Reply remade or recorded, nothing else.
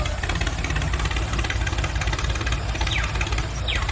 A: recorded